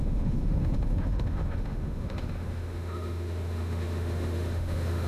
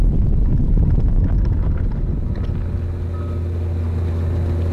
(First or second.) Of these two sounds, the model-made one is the first